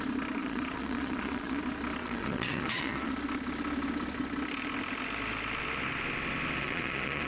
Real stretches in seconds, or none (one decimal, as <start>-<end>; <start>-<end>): 0.0-0.4; 1.6-2.0; 3.1-6.6